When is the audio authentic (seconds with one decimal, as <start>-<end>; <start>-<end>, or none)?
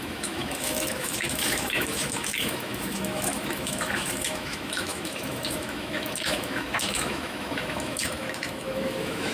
none